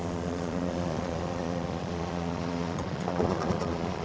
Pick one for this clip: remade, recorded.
remade